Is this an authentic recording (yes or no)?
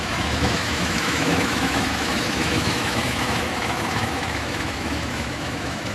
no